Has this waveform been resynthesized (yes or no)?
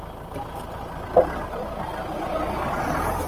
no